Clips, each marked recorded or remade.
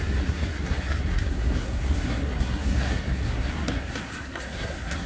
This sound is remade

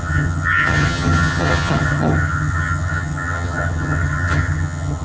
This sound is remade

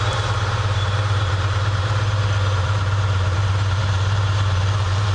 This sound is remade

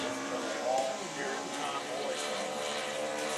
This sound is remade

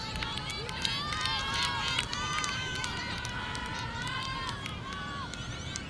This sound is remade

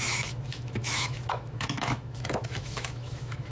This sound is remade